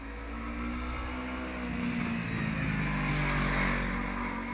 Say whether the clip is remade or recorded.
recorded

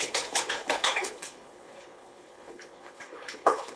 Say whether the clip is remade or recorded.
remade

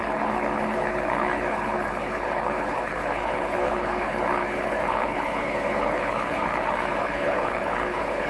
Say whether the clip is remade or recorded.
remade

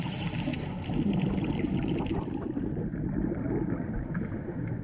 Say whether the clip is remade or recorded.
recorded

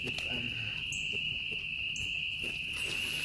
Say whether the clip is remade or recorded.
recorded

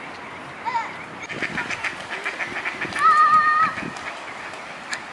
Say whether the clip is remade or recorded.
recorded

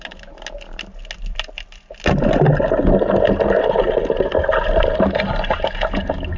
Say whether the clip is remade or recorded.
recorded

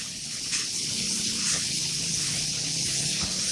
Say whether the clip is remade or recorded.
remade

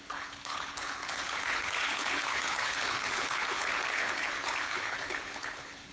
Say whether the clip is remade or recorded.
remade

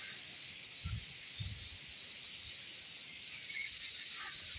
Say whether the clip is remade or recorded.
recorded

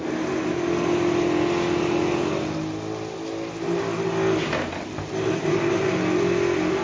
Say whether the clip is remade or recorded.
recorded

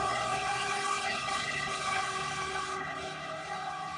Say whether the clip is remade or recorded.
remade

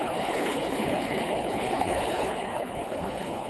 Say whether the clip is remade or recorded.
remade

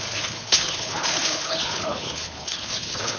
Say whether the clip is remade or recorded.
remade